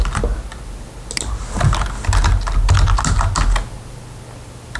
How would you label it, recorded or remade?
recorded